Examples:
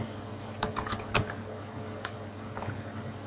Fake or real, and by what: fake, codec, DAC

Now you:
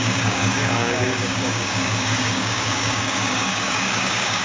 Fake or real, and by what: fake, codec, DAC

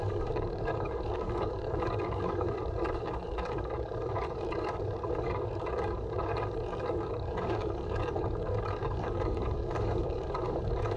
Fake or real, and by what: fake, codec, DAC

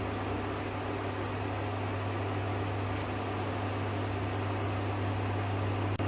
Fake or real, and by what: real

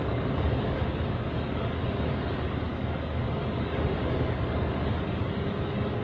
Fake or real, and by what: fake, codec, DAC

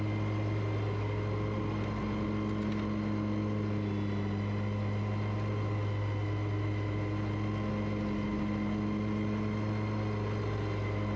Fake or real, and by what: real